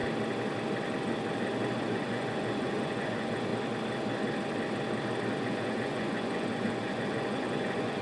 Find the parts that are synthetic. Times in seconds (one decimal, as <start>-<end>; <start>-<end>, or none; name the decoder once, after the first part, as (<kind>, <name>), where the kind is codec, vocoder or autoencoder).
1.8-3.5 (vocoder, Vocos); 5.4-8.0